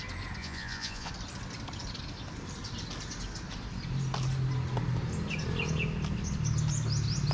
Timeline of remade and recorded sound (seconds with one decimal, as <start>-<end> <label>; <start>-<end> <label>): 0.0-0.4 recorded; 0.4-1.1 remade; 1.1-7.3 recorded